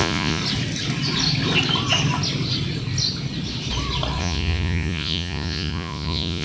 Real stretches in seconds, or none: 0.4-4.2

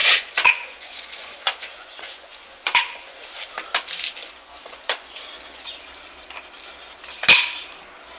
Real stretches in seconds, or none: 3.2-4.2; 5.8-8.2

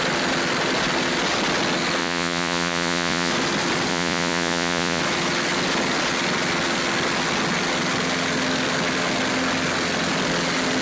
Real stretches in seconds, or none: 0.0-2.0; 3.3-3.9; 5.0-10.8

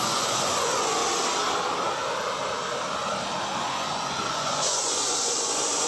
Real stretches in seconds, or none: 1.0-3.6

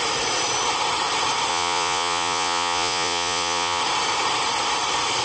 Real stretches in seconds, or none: 0.0-1.5; 3.8-5.2

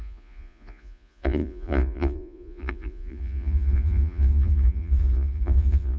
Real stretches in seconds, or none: none

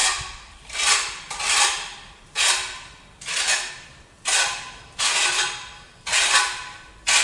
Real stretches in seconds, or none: 0.0-7.2